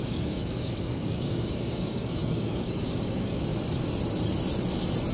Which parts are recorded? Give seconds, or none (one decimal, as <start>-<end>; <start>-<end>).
3.5-5.1